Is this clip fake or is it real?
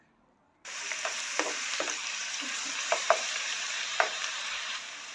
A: fake